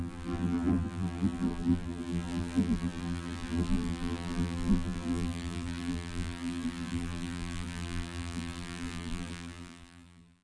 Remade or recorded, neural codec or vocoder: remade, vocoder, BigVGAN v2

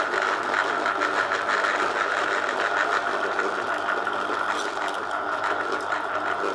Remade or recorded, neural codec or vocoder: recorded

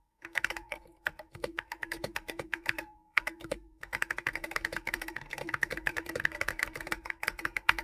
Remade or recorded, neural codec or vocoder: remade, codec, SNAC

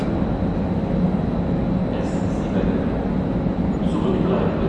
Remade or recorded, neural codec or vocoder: recorded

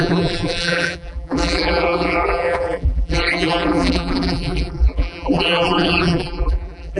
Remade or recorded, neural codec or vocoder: remade, vocoder, BigVGAN v2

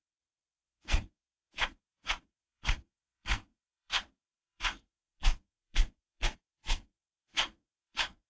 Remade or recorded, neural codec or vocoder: remade, codec, SNAC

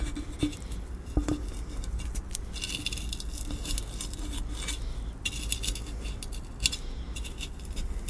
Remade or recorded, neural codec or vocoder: recorded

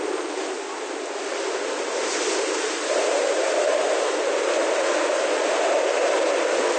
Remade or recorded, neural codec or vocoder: recorded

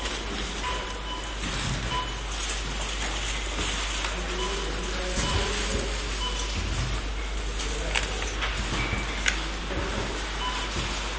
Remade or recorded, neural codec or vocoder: recorded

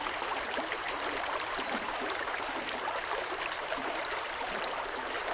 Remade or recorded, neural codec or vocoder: remade, vocoder, BigVGAN v2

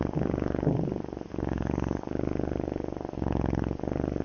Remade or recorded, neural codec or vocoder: recorded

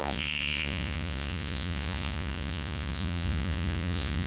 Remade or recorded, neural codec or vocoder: remade, vocoder, Vocos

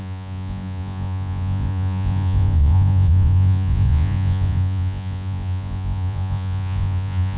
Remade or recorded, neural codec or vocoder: remade, vocoder, Vocos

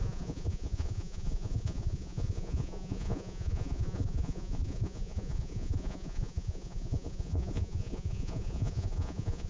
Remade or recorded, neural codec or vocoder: remade, vocoder, Vocos